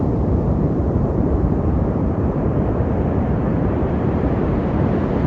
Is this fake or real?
fake